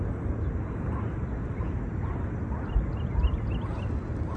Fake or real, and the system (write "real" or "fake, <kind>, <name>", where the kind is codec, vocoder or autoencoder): real